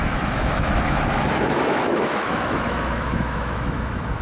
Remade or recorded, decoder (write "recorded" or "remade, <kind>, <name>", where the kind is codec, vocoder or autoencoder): remade, autoencoder, DAC-VAE